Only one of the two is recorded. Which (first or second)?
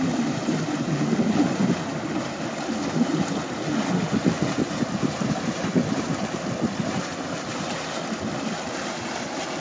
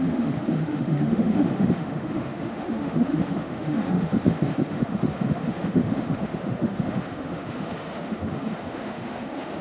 first